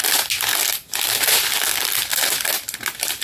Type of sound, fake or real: real